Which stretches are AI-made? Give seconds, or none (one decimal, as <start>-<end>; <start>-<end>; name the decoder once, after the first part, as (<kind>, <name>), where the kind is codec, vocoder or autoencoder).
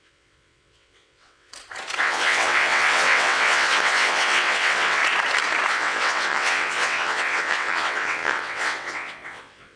0.0-1.5 (vocoder, WaveNeXt); 2.0-5.0; 5.7-9.8